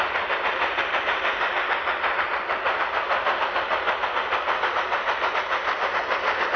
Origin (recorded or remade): recorded